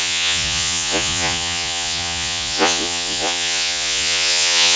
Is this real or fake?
fake